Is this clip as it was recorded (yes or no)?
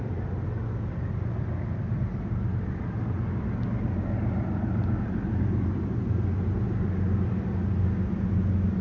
yes